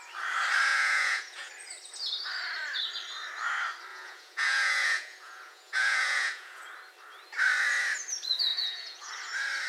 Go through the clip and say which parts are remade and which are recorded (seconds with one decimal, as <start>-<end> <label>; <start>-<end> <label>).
0.0-0.7 recorded; 0.7-1.5 remade; 1.5-3.9 recorded; 3.9-6.6 remade; 6.6-8.5 recorded; 8.5-9.1 remade; 9.1-9.7 recorded